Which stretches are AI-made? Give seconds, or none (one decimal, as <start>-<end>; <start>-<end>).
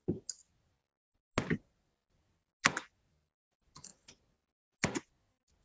none